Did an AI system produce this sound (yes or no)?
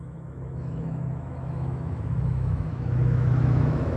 yes